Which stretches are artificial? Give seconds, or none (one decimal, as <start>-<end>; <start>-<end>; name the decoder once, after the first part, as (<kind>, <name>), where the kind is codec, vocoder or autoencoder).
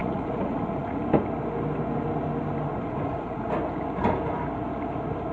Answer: 0.0-1.0 (vocoder, Vocos); 2.7-3.5